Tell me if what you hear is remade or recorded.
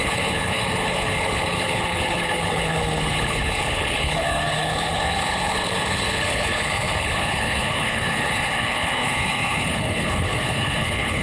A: remade